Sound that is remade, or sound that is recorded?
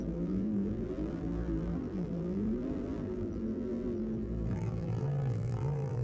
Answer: remade